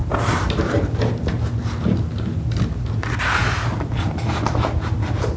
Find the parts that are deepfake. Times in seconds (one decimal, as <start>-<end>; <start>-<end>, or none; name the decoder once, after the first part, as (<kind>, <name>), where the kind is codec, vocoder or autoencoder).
none